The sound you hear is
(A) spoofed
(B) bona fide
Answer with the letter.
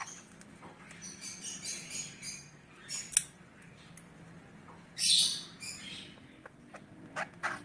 B